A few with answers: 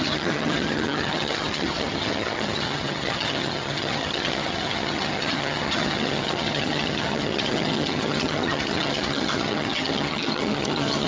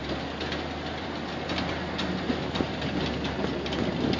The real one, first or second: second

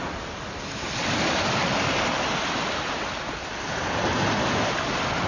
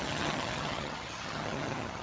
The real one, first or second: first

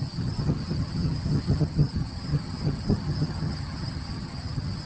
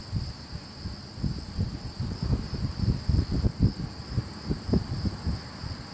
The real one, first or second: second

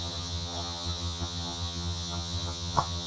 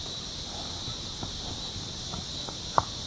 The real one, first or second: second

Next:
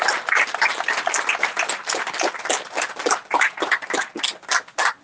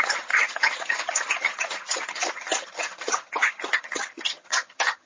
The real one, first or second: first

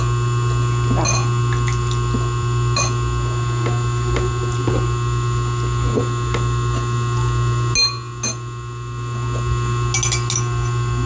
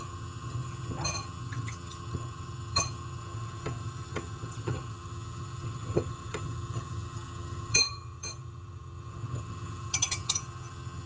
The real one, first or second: first